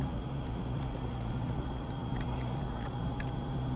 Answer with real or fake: fake